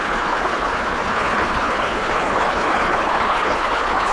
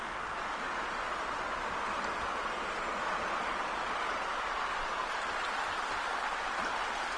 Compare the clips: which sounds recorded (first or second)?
second